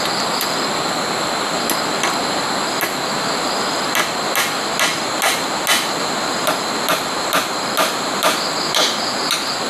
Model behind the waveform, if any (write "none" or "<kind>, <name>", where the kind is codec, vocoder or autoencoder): none